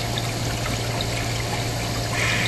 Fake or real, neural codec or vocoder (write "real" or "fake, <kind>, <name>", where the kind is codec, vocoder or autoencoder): real